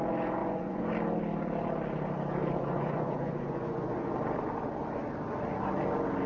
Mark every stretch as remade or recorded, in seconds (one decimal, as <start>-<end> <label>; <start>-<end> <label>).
0.0-0.4 recorded; 0.4-0.9 remade; 0.9-2.6 recorded; 2.6-4.1 remade; 4.1-6.3 recorded